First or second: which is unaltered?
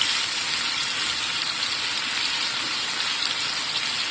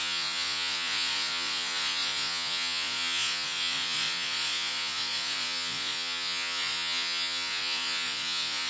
first